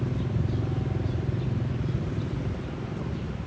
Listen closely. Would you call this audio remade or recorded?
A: recorded